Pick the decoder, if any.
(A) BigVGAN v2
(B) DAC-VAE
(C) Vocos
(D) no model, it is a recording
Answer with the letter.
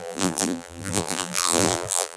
A